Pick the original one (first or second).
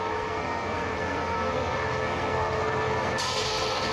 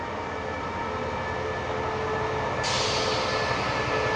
second